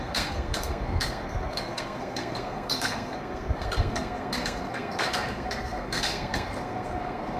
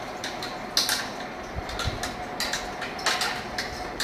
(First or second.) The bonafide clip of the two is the second